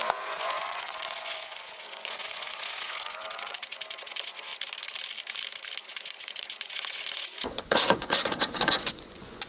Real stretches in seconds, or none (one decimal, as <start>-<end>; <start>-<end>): 4.5-5.8